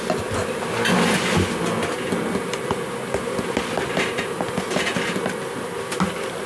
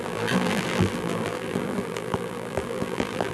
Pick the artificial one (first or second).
second